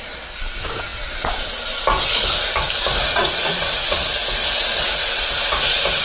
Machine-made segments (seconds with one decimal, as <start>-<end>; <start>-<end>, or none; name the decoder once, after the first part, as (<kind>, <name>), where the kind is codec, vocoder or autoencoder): 3.0-4.0 (vocoder, Vocos); 5.0-6.0